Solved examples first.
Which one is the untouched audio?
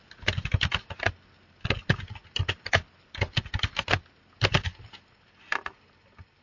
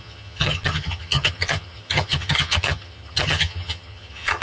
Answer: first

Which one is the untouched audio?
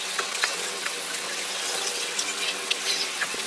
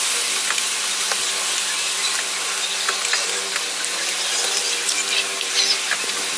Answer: second